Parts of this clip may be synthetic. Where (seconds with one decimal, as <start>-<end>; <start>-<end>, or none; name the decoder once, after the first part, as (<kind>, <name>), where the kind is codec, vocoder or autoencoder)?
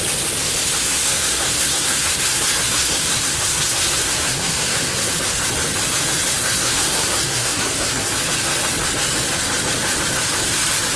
0.8-5.1 (codec, SNAC); 6.4-8.1